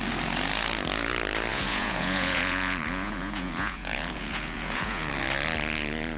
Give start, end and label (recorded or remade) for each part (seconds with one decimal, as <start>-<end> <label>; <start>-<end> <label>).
0.0-1.5 recorded; 1.5-5.1 remade; 5.1-6.2 recorded